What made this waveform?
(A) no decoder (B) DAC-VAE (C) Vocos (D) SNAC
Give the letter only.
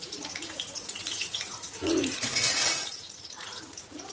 C